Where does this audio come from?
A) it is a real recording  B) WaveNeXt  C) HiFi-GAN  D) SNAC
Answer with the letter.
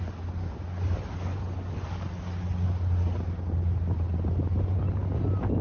A